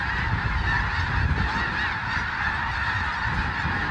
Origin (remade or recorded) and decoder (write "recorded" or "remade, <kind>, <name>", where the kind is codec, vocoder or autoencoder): recorded